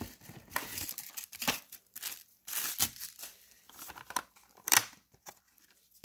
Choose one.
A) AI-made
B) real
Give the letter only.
A